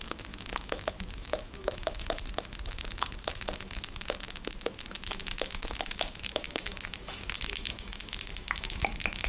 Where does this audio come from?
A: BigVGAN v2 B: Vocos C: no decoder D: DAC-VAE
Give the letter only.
D